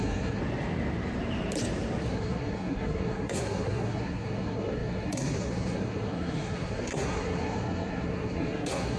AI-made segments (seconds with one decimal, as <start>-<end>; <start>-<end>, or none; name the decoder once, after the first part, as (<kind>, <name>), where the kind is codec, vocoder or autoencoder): 0.0-0.4 (codec, SNAC); 2.0-9.0